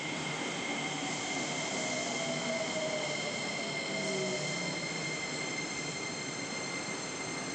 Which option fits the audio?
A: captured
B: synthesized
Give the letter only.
A